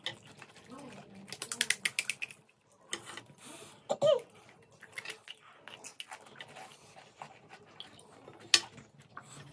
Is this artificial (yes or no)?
no